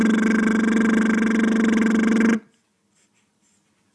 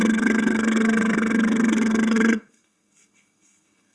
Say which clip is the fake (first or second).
second